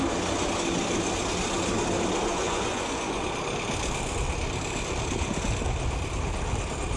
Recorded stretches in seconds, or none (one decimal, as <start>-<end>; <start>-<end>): 0.0-2.3; 3.2-7.0